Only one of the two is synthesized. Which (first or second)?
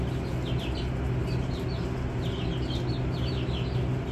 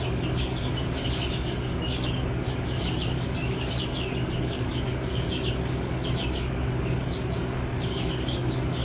second